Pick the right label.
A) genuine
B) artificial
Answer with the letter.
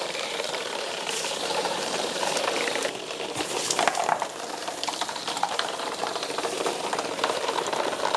B